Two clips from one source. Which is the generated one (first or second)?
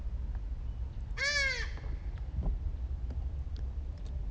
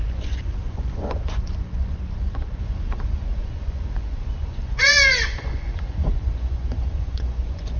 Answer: second